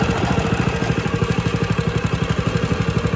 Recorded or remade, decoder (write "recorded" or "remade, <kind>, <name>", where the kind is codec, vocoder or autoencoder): recorded